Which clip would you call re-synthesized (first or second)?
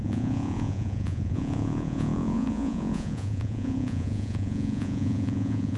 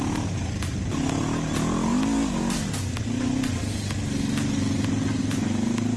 first